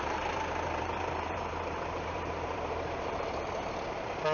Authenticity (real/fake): fake